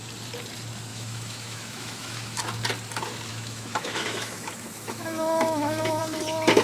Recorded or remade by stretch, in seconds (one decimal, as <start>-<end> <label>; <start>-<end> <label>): 0.0-0.9 recorded; 0.9-2.4 remade; 2.4-3.3 recorded; 3.3-6.0 remade; 6.0-6.6 recorded